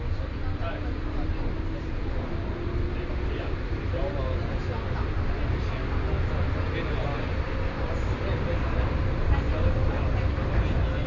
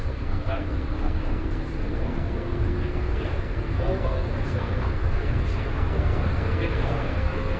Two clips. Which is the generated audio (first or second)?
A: second